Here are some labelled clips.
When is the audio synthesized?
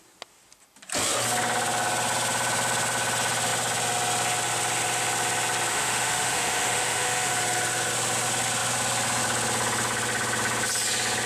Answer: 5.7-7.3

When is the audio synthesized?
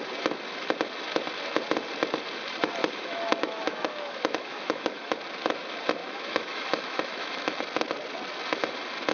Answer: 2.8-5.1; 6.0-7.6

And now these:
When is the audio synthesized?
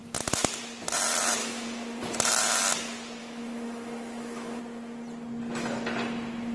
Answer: 1.4-2.0; 3.2-4.6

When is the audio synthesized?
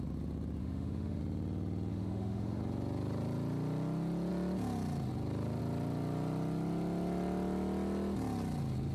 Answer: 0.6-1.2; 1.9-2.6